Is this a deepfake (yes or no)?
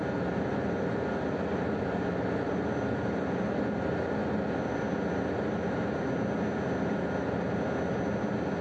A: no